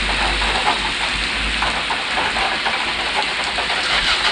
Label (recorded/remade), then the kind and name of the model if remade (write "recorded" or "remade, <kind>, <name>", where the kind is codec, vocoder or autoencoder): recorded